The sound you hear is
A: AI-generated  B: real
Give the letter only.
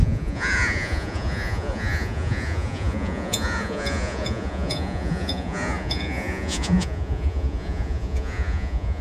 A